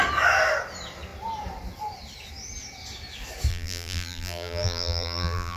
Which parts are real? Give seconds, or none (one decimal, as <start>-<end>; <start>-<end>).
0.0-3.5